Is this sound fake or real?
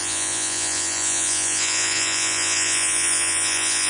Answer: fake